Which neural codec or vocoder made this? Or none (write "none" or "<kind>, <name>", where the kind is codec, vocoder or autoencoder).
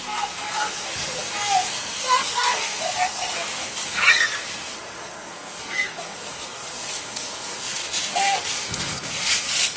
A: codec, SNAC